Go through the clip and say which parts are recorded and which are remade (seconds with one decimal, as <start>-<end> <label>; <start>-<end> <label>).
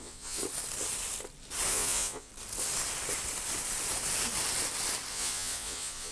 0.0-0.4 remade; 0.4-1.7 recorded; 1.7-2.3 remade; 2.3-5.1 recorded; 5.1-6.1 remade